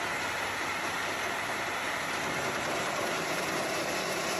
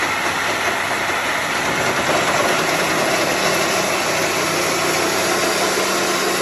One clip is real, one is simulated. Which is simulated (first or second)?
first